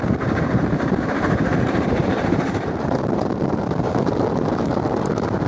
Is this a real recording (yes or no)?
no